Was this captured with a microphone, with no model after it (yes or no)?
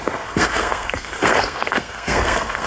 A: no